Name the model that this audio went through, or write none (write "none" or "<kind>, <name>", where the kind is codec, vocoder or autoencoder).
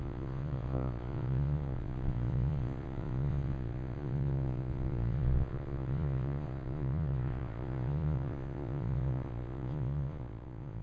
vocoder, Vocos